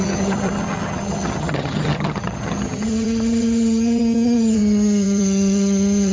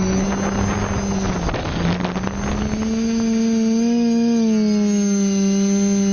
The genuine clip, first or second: second